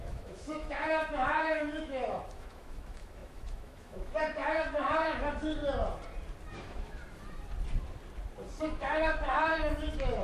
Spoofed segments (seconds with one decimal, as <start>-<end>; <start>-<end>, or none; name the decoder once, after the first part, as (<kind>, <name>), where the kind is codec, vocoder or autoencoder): 0.0-5.6 (autoencoder, DAC-VAE); 6.6-7.0; 8.6-10.2